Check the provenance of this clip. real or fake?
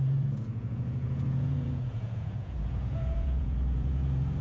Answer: fake